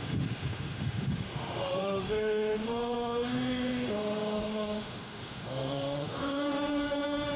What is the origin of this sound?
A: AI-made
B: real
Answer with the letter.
A